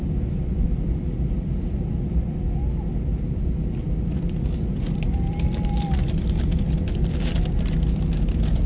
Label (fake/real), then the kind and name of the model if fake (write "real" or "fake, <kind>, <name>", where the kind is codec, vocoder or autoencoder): real